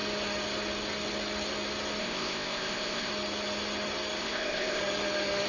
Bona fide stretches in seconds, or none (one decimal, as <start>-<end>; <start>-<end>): 0.0-2.0; 3.1-4.2; 4.8-5.5